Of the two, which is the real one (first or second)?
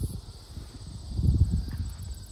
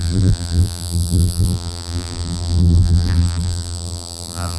first